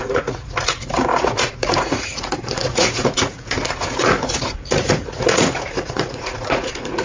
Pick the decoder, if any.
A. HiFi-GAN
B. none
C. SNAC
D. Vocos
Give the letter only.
D